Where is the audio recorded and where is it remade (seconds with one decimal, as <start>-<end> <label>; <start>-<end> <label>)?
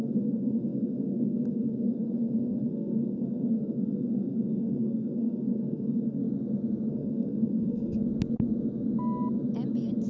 0.0-6.2 remade; 6.2-6.9 recorded; 6.9-8.0 remade; 8.0-10.1 recorded